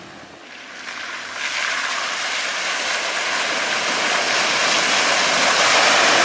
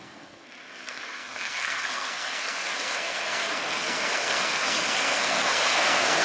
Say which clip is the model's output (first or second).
second